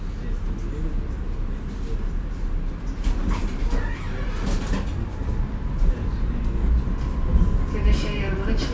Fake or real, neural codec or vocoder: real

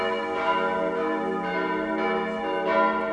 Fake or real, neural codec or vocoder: real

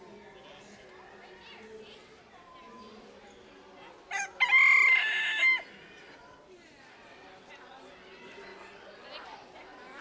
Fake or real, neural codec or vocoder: real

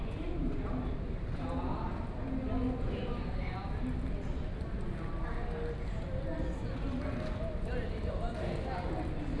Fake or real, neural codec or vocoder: real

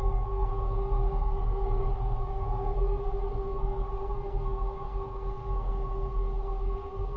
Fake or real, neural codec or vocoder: fake, codec, SNAC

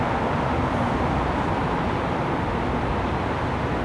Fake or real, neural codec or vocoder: real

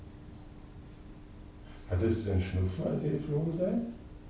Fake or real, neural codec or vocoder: real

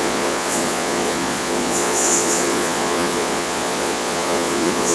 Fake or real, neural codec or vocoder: fake, vocoder, Vocos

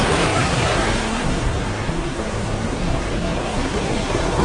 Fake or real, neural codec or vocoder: fake, codec, SNAC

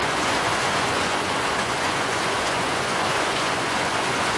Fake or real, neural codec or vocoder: fake, vocoder, Vocos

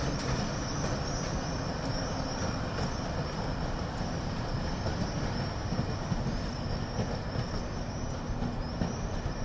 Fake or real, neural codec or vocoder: real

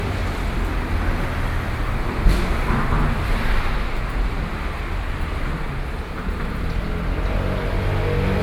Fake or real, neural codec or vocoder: real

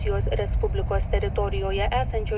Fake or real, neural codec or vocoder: real